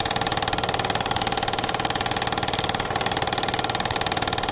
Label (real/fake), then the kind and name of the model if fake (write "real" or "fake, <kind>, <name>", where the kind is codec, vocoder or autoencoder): real